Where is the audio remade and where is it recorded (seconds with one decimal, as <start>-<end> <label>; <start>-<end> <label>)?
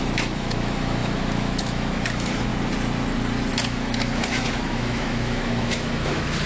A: 0.0-2.5 remade; 2.5-3.5 recorded; 3.5-6.5 remade